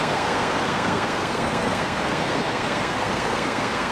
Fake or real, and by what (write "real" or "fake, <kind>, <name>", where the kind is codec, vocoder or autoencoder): fake, codec, SNAC